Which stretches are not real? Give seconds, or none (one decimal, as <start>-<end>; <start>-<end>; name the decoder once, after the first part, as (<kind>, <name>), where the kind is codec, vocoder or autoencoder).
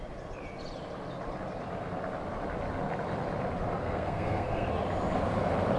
3.8-4.7 (codec, SNAC)